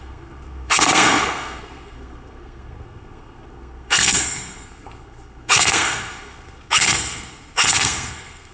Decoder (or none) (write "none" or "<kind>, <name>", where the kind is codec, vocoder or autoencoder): codec, SNAC